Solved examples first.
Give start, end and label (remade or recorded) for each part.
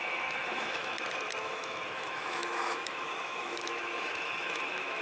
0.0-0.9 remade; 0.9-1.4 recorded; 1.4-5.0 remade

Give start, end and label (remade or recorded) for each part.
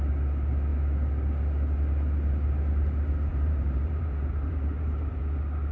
0.0-3.3 recorded; 3.3-5.2 remade; 5.2-5.7 recorded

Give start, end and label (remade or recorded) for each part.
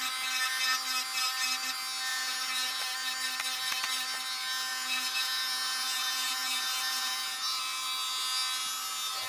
0.0-2.1 recorded; 2.1-2.8 remade; 2.8-4.7 recorded; 4.7-7.6 remade; 7.6-9.3 recorded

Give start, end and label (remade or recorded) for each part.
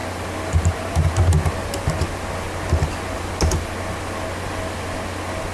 0.0-5.5 recorded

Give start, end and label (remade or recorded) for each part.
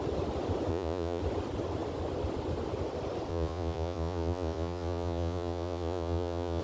0.0-0.7 recorded; 0.7-1.2 remade; 1.2-3.3 recorded; 3.3-6.6 remade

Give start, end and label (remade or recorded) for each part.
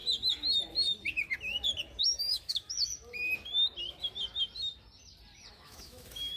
0.0-2.0 recorded; 2.0-2.9 remade; 2.9-5.5 recorded; 5.5-6.4 remade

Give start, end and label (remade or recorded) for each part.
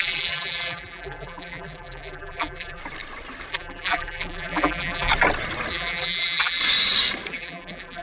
0.0-2.8 remade; 2.8-3.5 recorded; 3.5-5.1 remade; 5.1-5.7 recorded; 5.7-6.6 remade; 6.6-7.3 recorded; 7.3-8.0 remade